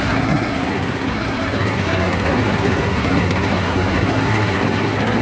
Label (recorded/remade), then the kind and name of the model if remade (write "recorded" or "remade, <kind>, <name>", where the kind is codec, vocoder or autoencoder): remade, codec, SNAC